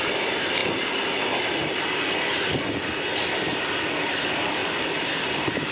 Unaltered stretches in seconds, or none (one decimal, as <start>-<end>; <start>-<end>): 0.6-4.0